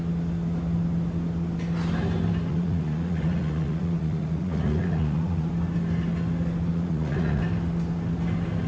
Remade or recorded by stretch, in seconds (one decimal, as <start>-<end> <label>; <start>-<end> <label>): 0.0-2.5 recorded; 2.5-5.5 remade; 5.5-6.7 recorded; 6.7-7.4 remade; 7.4-8.7 recorded